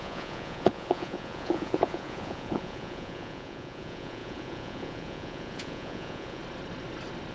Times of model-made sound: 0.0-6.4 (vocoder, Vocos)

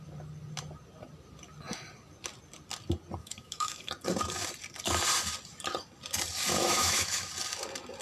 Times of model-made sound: 3.2-3.9 (autoencoder, DAC-VAE); 6.6-7.3